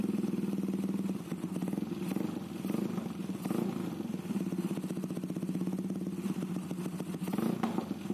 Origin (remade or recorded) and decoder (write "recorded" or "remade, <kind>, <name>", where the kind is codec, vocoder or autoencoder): recorded